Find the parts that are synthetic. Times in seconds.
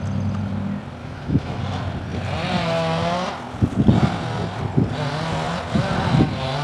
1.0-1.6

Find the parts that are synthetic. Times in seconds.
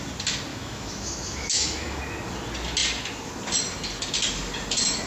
0.5-2.0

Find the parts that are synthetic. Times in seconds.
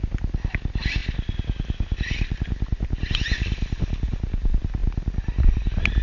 none